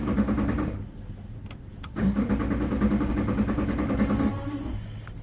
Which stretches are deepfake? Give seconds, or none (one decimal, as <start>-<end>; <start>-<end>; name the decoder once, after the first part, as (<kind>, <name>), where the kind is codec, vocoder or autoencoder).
none